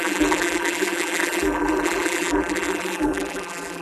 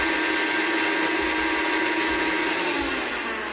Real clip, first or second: second